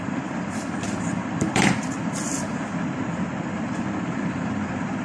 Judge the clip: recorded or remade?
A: remade